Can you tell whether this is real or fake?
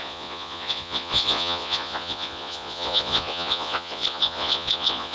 fake